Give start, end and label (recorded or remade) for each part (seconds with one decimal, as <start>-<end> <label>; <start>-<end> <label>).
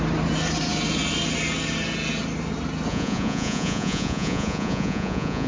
0.0-2.9 recorded; 2.9-5.5 remade